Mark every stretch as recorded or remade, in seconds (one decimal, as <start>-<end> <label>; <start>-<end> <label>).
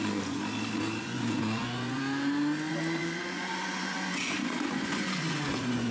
0.0-0.4 remade; 0.4-1.0 recorded; 1.0-2.0 remade; 2.0-2.7 recorded; 2.7-5.9 remade